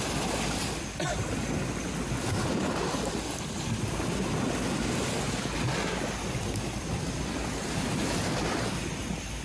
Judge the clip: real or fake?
real